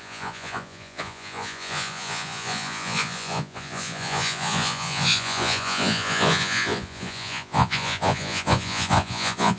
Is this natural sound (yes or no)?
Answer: no